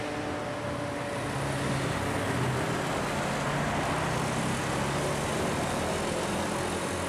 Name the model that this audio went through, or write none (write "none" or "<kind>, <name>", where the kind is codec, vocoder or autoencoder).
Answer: none